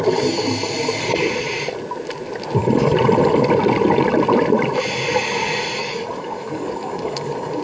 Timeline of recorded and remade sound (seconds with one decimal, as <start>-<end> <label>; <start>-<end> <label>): 0.0-5.8 recorded; 5.8-7.6 remade